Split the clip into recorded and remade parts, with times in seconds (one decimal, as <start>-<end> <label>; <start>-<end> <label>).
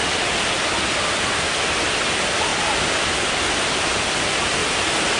0.0-5.2 recorded